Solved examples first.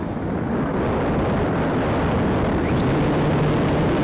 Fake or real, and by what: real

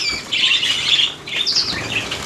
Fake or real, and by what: real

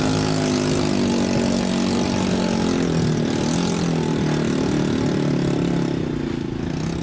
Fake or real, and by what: real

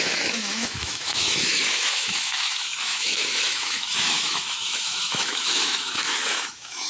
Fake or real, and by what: fake, autoencoder, DAC-VAE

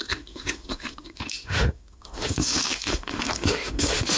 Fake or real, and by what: fake, autoencoder, DAC-VAE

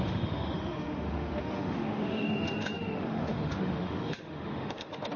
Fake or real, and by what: fake, autoencoder, DAC-VAE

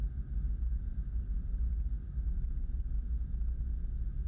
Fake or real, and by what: real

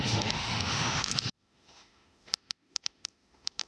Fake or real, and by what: fake, autoencoder, DAC-VAE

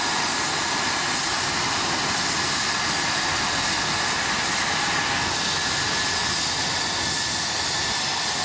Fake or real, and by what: real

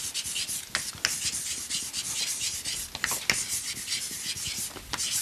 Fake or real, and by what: real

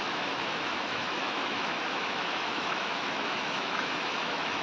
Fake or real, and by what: fake, autoencoder, DAC-VAE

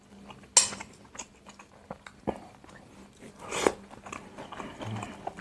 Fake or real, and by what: real